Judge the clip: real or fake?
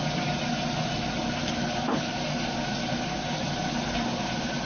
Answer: real